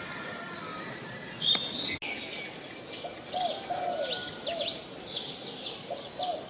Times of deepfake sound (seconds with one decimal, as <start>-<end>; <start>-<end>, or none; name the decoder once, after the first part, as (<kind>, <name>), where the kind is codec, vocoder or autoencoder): none